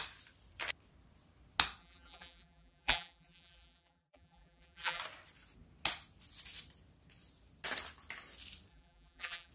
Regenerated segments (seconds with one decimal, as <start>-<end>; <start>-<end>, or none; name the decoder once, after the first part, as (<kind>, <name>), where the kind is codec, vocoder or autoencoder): 1.8-5.0 (vocoder, BigVGAN v2); 8.7-9.5